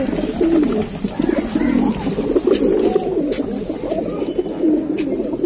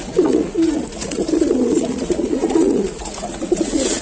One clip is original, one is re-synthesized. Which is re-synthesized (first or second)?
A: second